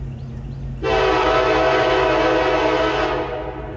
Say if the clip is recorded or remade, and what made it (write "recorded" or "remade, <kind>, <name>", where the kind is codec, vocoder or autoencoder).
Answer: recorded